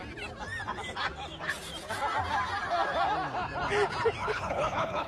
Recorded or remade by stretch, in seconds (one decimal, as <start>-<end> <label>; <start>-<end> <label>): 0.0-4.2 recorded; 4.2-5.1 remade

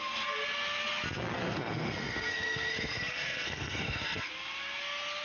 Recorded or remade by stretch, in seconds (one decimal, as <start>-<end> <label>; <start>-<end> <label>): 0.0-1.4 recorded; 1.4-4.3 remade; 4.3-5.2 recorded